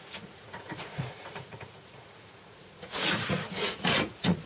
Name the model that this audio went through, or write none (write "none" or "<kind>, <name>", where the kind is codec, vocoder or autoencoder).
vocoder, Vocos